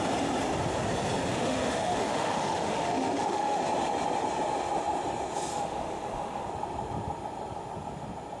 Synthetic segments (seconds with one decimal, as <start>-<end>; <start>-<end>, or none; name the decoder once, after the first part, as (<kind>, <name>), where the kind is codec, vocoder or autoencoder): 1.3-3.6 (autoencoder, DAC-VAE); 5.5-6.5

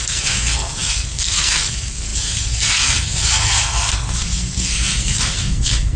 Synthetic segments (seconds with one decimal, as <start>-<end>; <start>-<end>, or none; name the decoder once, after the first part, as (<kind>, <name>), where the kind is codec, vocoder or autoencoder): 0.0-6.0 (codec, SNAC)

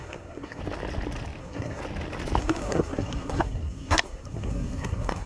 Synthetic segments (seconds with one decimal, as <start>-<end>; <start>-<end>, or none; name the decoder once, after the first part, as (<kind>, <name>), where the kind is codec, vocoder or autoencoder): 0.0-0.6 (codec, SNAC); 1.4-1.8; 2.4-5.3

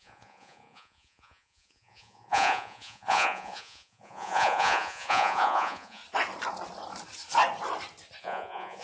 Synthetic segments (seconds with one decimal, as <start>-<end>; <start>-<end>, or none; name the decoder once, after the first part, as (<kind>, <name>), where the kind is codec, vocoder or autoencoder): 0.0-6.0 (vocoder, Vocos); 8.2-8.8